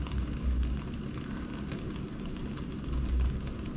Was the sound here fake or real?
real